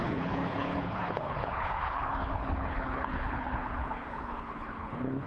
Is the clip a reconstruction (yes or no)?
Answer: yes